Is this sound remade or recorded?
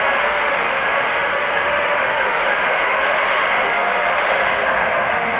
remade